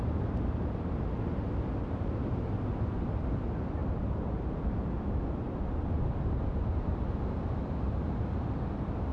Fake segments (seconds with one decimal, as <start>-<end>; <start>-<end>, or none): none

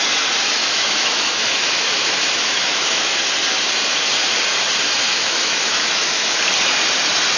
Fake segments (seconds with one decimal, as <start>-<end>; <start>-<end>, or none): 0.6-3.2; 5.1-6.4

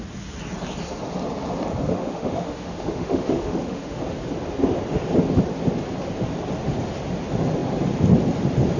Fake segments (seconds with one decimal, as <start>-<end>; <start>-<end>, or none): 1.9-4.0

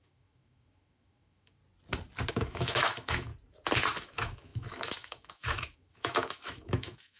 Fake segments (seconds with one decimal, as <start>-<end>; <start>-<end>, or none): 0.0-1.6; 2.3-3.3; 4.0-7.2